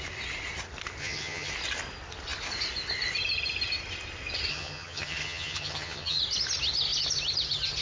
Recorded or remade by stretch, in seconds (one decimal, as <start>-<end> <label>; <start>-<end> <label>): 0.0-1.0 recorded; 1.0-1.5 remade; 1.5-4.5 recorded; 4.5-6.2 remade; 6.2-7.8 recorded